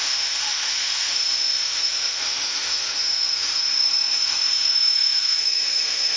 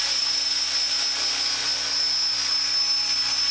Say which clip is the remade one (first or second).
first